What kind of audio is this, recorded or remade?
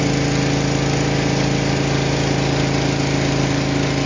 recorded